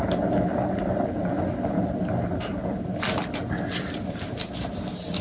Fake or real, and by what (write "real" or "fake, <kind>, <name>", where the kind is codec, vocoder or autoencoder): real